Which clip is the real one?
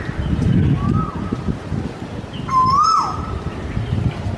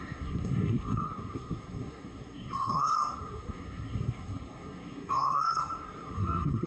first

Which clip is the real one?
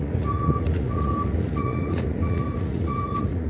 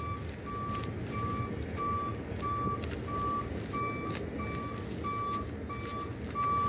second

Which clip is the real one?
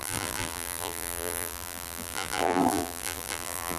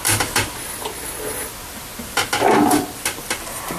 second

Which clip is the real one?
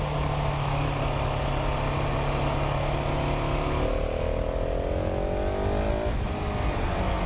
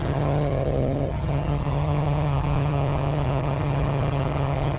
first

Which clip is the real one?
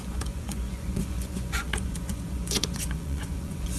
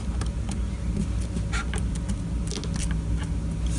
second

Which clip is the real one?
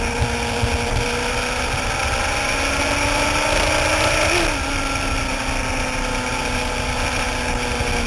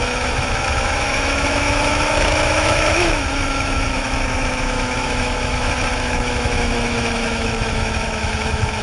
first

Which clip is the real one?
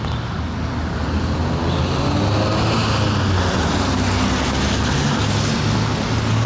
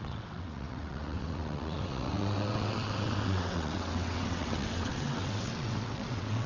first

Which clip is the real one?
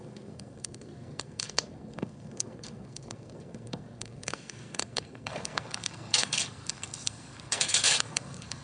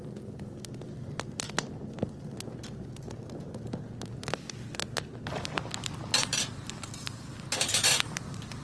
second